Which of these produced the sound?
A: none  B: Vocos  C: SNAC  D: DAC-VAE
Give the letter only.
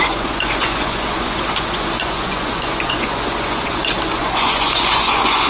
B